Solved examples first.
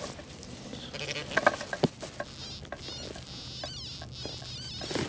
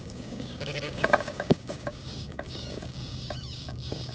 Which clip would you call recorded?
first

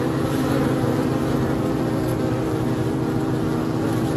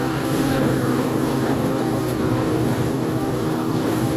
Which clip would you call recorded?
first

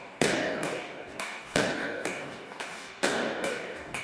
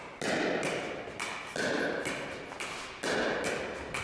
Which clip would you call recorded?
second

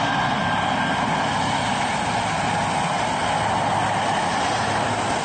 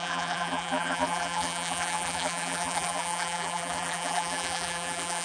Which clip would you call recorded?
first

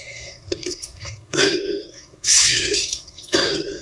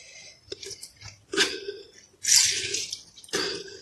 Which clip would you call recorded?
second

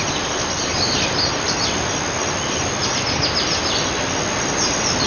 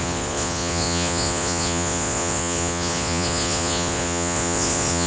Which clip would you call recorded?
first